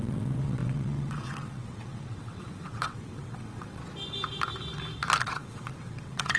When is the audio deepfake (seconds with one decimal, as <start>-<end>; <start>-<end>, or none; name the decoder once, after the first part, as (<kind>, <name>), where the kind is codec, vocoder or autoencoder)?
0.0-3.8 (vocoder, WaveNeXt); 5.2-6.4